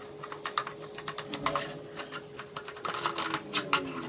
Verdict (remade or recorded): recorded